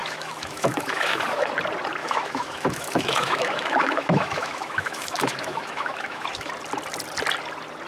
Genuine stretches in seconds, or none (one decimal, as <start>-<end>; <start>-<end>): 1.5-2.0; 6.5-7.9